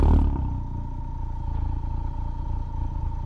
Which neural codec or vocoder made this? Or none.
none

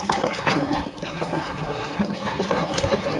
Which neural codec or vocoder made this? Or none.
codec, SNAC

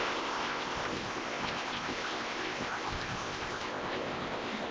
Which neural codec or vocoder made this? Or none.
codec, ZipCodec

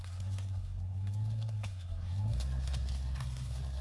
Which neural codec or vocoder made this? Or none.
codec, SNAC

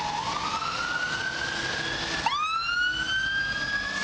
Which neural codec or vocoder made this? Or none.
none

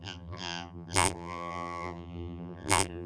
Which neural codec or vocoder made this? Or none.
vocoder, BigVGAN v2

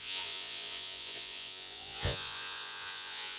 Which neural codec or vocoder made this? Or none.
vocoder, Vocos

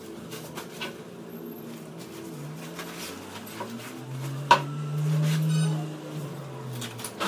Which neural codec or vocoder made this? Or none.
none